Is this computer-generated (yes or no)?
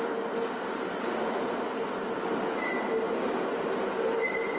no